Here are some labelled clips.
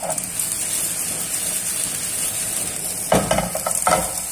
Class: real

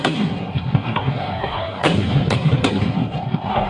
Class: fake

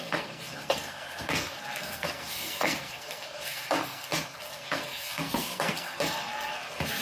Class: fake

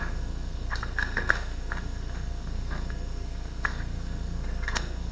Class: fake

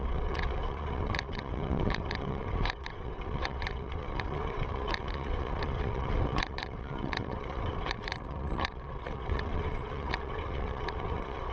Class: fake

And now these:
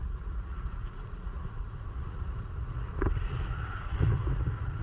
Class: fake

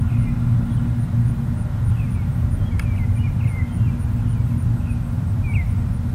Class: real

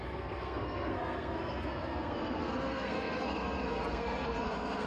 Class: fake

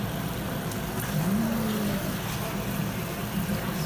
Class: real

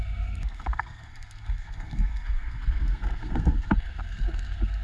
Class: fake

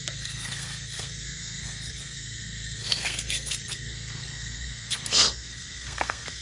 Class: fake